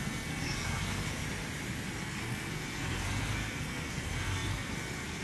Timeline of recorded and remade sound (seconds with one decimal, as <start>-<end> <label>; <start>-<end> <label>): 0.0-1.2 remade; 1.2-2.0 recorded; 2.0-5.2 remade